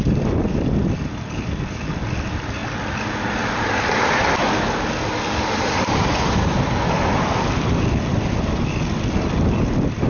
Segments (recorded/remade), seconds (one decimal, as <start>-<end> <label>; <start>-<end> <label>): 0.0-10.1 recorded